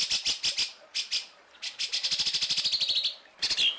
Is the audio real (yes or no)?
yes